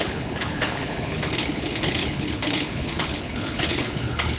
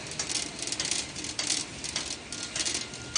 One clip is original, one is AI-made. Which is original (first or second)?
second